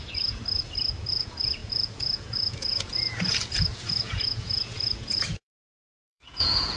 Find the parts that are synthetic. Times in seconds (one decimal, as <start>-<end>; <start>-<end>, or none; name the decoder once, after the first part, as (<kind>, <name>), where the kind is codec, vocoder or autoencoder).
0.0-0.4 (vocoder, Vocos); 1.0-6.8